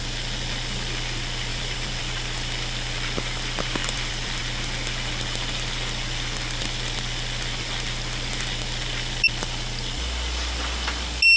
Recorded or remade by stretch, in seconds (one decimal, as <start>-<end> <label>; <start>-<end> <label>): 0.0-1.5 recorded; 1.5-2.0 remade; 2.0-3.8 recorded; 3.8-4.4 remade; 4.4-11.4 recorded